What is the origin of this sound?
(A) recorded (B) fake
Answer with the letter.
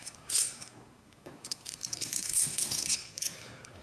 B